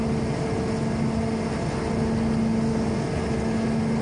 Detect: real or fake real